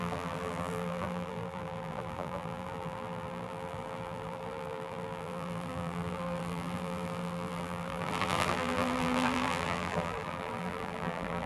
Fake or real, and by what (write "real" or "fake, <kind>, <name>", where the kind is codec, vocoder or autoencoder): fake, vocoder, BigVGAN v2